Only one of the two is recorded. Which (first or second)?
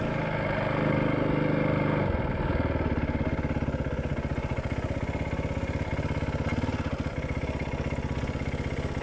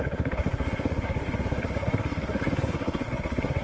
first